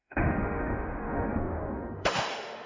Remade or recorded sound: remade